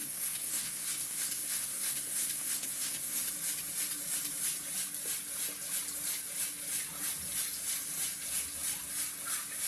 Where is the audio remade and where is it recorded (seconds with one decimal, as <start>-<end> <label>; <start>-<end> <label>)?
0.0-3.3 remade; 3.3-9.7 recorded